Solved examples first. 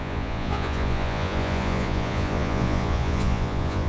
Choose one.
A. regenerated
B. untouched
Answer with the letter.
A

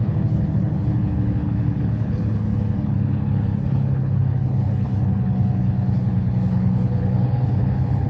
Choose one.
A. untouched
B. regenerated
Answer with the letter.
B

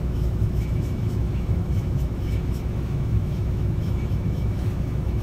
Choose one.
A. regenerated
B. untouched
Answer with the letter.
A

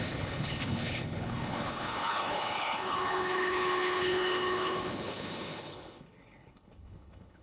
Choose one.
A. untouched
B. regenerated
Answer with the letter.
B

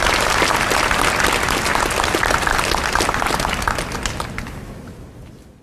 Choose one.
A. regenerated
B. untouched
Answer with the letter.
B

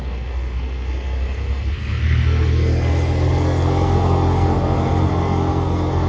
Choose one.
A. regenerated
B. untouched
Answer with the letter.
A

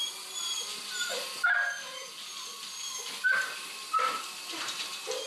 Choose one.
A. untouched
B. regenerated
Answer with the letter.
A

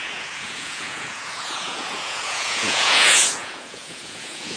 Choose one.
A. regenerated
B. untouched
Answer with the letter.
A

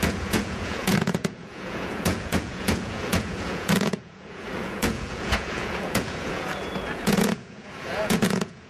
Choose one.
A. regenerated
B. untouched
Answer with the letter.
A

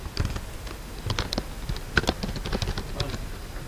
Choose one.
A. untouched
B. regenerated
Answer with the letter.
A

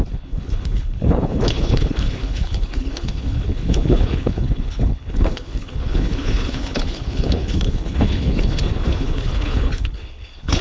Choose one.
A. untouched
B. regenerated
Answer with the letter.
B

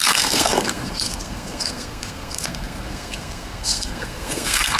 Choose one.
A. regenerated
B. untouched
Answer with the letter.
A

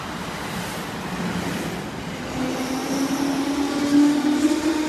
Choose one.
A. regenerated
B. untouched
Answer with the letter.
B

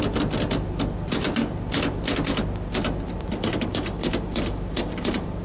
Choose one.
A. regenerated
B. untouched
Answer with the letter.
B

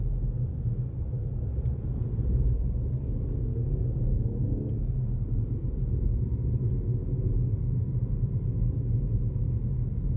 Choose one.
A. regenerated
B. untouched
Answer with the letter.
B